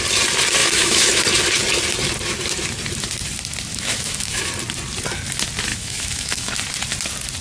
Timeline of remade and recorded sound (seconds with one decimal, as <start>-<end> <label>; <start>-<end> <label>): 0.0-0.6 recorded; 0.6-1.2 remade; 1.2-3.7 recorded; 3.7-4.5 remade; 4.5-5.7 recorded; 5.7-6.5 remade; 6.5-7.4 recorded